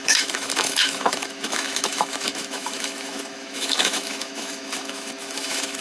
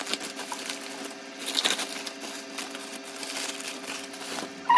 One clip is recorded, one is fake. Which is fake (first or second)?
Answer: first